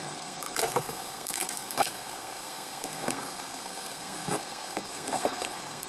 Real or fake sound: fake